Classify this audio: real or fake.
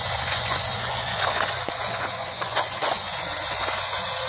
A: fake